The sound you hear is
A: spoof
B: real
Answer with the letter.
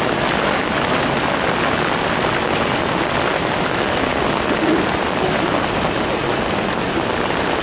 B